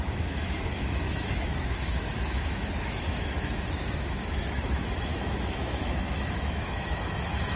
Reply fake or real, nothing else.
fake